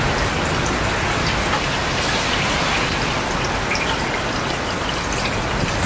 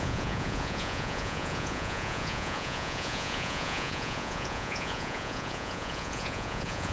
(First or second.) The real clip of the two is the first